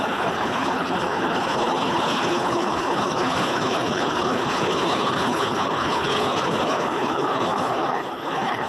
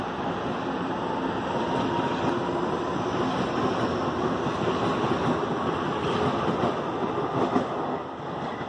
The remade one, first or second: first